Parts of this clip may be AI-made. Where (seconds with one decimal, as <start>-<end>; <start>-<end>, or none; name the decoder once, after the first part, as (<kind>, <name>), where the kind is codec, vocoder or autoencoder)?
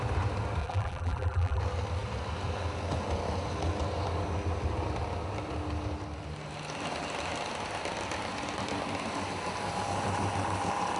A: 0.6-1.6 (vocoder, BigVGAN v2)